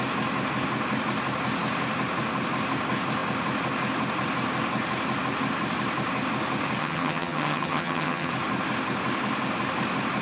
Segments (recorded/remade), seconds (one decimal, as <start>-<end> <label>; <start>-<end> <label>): 0.0-6.8 recorded; 6.8-8.3 remade; 8.3-10.2 recorded